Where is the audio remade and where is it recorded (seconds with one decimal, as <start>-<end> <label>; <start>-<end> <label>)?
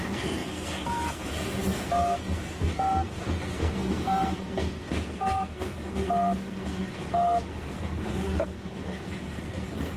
0.0-10.0 remade